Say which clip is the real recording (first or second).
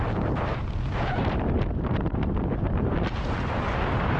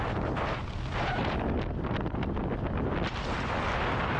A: second